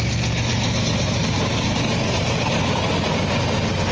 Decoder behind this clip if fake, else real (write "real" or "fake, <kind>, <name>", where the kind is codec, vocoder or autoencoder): real